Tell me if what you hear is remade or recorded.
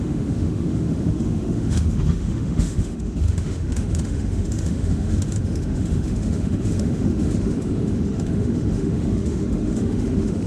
remade